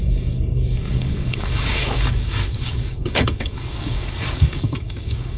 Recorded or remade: remade